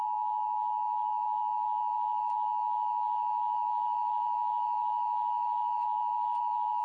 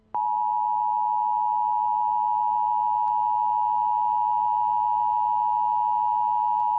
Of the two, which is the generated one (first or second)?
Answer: first